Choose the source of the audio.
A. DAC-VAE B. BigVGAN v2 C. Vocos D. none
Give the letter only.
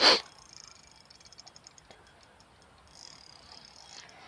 D